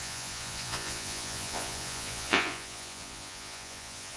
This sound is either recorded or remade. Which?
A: remade